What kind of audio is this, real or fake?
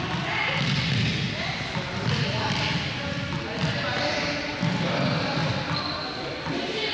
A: real